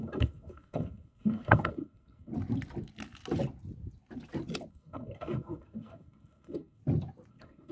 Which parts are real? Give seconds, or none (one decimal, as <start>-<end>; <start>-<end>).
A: 2.3-4.7; 6.8-7.3